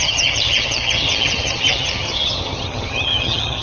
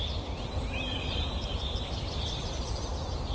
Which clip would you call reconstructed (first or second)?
first